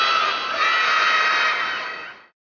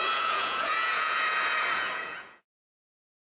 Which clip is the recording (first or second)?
first